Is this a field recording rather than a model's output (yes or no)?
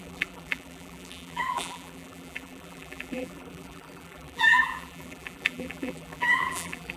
no